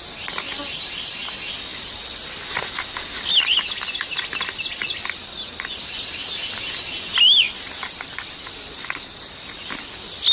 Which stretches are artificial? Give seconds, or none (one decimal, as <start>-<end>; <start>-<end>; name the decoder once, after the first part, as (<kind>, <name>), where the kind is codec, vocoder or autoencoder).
none